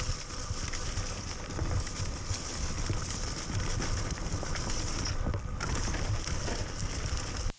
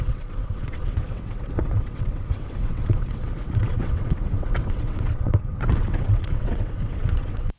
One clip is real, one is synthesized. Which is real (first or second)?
first